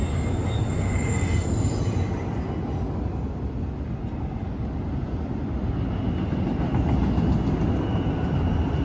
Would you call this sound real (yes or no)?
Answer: yes